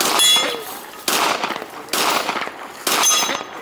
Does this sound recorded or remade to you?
recorded